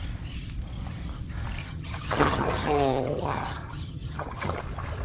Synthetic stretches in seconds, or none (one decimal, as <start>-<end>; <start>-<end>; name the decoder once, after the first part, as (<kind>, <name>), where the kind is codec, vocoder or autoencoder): 1.6-4.6 (vocoder, HiFi-GAN)